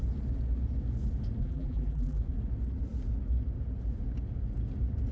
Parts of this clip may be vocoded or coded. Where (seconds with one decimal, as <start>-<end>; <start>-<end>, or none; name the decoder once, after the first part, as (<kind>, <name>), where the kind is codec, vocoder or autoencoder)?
1.4-2.2 (vocoder, BigVGAN v2)